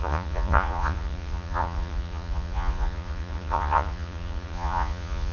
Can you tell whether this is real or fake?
fake